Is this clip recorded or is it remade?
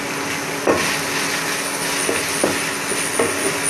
recorded